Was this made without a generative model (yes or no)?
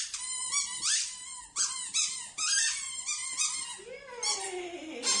yes